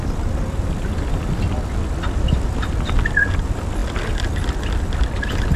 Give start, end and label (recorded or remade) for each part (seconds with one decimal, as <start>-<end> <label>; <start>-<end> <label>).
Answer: 0.0-5.6 recorded